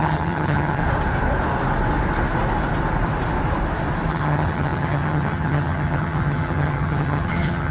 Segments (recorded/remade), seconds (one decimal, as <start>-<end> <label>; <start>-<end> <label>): 0.0-0.8 remade; 0.8-4.1 recorded; 4.1-7.7 remade